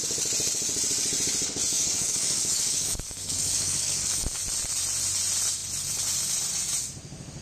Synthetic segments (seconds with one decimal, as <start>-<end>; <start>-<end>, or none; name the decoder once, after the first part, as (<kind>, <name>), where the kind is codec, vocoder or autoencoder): 1.7-4.4 (codec, DAC)